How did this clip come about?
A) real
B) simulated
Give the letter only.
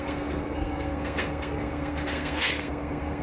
B